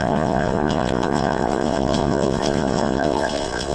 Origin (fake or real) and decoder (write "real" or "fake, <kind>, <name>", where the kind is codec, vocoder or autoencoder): fake, vocoder, Vocos